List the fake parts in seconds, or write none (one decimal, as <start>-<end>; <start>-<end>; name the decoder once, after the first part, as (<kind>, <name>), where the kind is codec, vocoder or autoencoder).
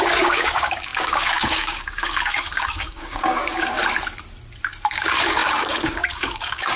0.0-3.8 (codec, DAC); 4.9-6.8